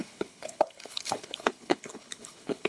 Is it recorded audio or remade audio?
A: remade